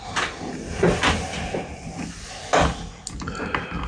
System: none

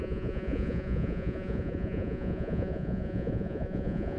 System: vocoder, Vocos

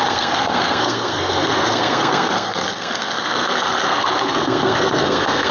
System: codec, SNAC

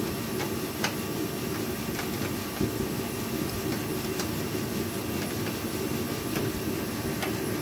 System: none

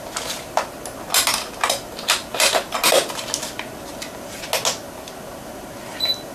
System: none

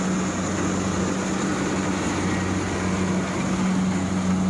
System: none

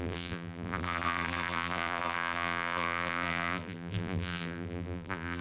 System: vocoder, BigVGAN v2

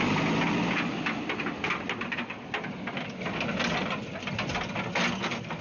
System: none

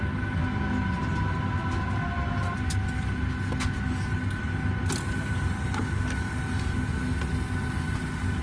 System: none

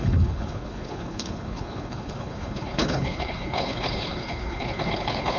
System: codec, HILCodec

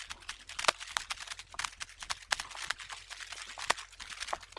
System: none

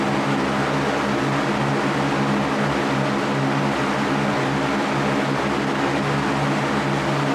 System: none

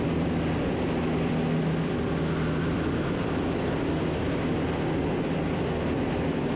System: none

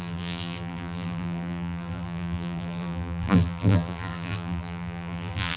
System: vocoder, BigVGAN v2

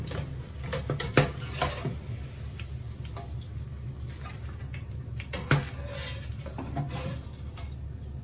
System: none